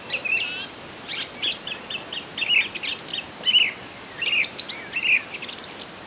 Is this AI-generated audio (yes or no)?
no